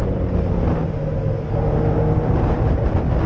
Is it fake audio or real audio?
real